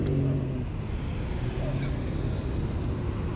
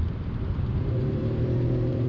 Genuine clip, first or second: first